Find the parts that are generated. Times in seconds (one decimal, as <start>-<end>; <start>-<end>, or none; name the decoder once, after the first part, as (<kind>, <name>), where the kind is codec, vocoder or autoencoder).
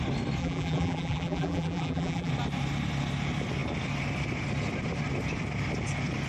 0.4-2.3 (vocoder, BigVGAN v2)